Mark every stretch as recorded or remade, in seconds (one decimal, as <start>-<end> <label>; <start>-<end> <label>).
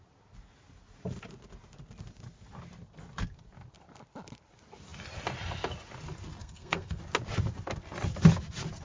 0.0-6.4 recorded; 6.4-7.0 remade; 7.0-8.8 recorded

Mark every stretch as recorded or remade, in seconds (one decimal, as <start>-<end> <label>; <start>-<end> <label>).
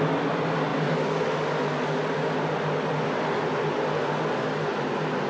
0.0-5.3 recorded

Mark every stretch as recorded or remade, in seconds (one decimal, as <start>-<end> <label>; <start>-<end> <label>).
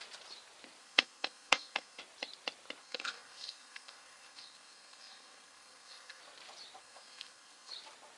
0.0-0.8 recorded; 0.8-2.0 remade; 2.0-2.8 recorded; 2.8-6.2 remade; 6.2-6.8 recorded; 6.8-7.7 remade; 7.7-8.2 recorded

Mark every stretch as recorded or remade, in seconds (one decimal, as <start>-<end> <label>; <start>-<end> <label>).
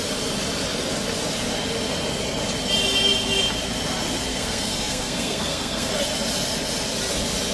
0.0-4.3 recorded; 4.3-5.9 remade; 5.9-7.5 recorded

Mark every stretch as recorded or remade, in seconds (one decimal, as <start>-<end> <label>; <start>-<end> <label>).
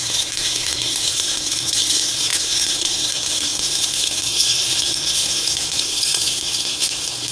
0.0-7.3 remade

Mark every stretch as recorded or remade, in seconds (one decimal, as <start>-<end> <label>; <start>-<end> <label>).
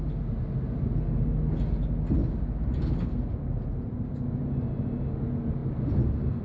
0.0-6.4 recorded